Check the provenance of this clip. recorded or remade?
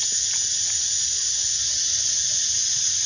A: recorded